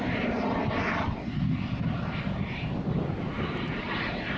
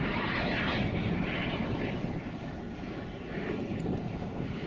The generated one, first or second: second